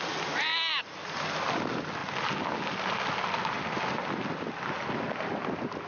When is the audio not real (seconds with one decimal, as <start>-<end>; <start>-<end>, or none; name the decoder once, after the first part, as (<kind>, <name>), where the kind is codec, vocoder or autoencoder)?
none